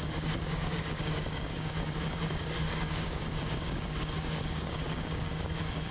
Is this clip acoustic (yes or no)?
no